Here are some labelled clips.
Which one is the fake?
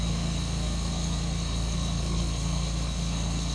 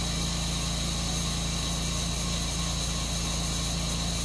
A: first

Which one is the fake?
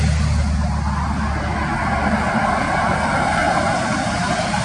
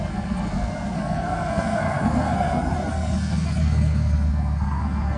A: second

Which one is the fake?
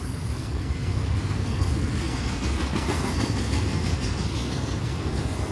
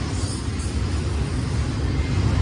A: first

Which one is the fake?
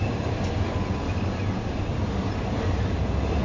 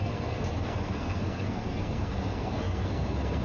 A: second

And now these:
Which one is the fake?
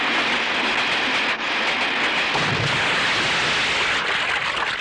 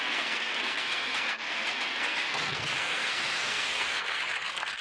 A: second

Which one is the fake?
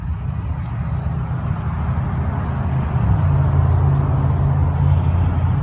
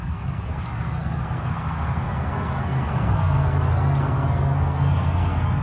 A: second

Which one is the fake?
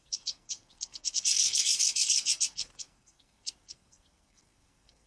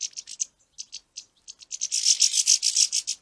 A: first